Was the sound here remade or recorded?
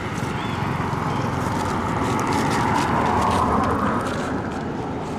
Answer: recorded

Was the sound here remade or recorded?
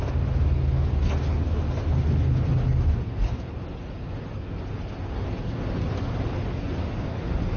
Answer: recorded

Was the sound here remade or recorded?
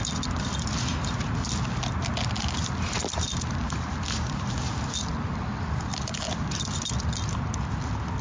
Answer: recorded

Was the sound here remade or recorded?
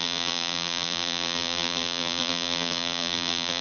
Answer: remade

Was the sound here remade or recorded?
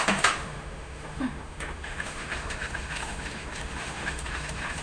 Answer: remade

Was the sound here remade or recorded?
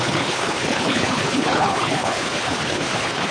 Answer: remade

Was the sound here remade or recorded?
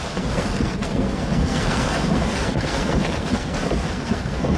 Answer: remade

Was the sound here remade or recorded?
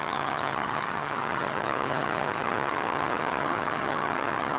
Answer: remade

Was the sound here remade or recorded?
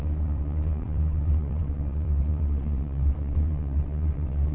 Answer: remade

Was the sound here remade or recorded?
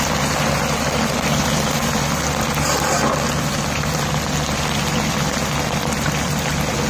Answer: recorded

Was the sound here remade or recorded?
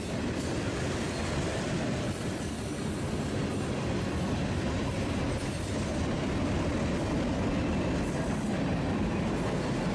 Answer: recorded